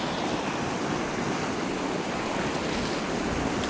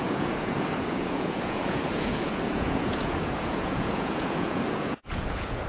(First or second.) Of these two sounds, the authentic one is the first